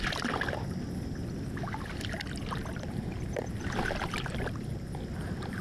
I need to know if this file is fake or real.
real